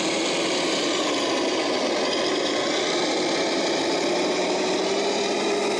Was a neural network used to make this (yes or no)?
no